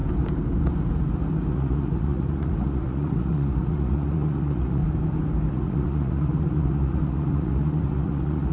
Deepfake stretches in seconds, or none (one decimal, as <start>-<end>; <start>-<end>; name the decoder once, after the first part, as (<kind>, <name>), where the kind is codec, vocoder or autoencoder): 1.5-4.8 (vocoder, Vocos); 5.5-8.5